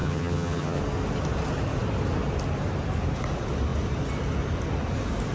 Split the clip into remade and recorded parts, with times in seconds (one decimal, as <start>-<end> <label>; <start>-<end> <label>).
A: 0.0-0.8 remade; 0.8-5.3 recorded